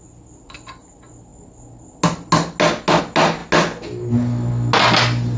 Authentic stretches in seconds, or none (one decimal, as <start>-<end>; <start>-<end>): 0.0-5.4